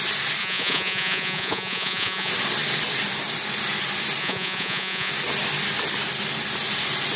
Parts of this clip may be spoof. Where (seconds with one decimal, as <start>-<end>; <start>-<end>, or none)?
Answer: 0.4-2.3; 4.2-5.1